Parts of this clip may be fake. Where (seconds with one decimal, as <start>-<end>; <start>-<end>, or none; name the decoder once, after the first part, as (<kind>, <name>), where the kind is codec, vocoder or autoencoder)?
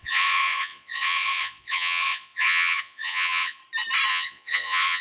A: 0.0-3.6 (vocoder, Vocos); 4.1-5.0